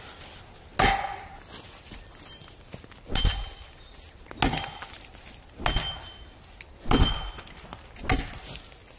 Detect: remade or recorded recorded